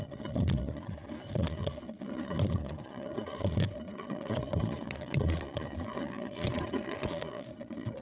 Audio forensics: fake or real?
fake